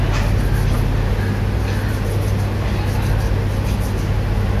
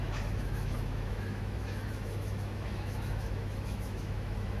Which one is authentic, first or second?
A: first